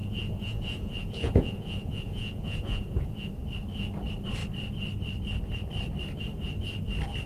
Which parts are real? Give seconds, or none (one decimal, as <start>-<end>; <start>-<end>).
3.3-7.3